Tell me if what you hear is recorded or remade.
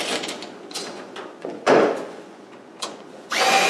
remade